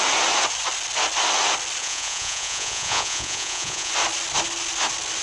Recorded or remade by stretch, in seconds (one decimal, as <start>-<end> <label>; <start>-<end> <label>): 0.0-1.8 recorded; 1.8-3.9 remade; 3.9-5.2 recorded